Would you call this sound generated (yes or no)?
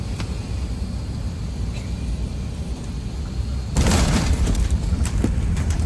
no